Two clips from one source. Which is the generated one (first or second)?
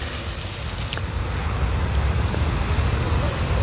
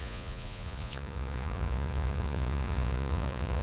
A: second